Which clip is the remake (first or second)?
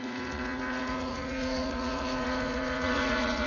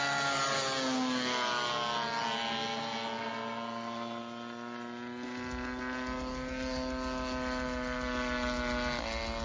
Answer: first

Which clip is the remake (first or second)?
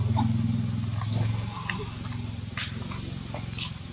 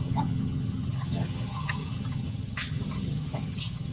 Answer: second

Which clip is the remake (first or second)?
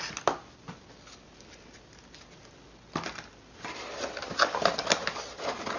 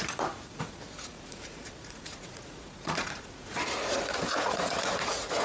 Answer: second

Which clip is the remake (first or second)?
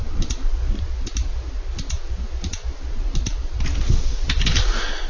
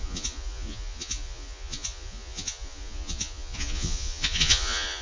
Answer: second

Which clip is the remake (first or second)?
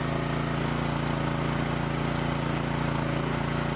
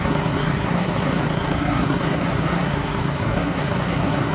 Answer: second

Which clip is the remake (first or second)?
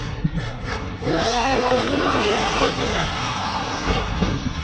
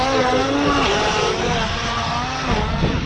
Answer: first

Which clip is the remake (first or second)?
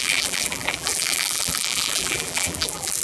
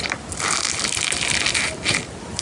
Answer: first